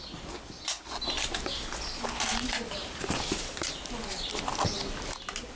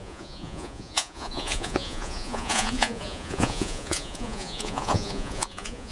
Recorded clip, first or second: first